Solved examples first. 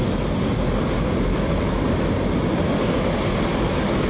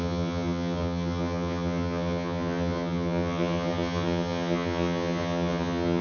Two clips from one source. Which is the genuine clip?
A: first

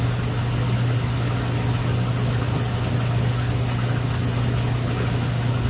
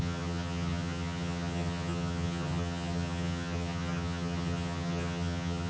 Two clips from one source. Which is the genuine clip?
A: first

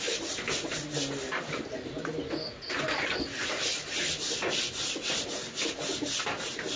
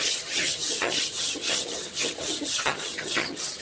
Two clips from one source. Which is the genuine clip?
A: first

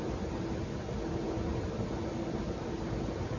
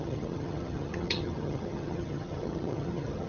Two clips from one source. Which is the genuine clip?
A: first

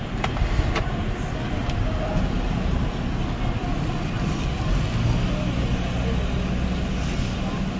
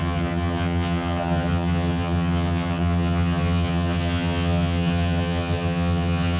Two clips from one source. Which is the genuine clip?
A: first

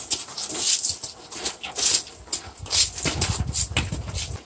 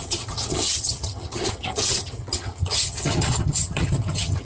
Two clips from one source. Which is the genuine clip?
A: first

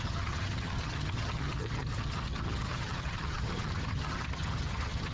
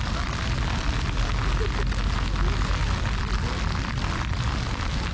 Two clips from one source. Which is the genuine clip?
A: second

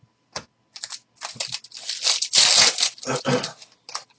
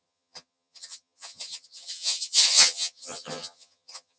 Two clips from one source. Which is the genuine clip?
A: first